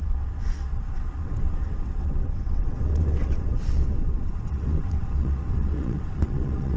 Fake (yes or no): yes